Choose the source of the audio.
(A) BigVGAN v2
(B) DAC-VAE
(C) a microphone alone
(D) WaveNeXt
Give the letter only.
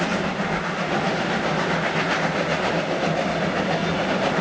C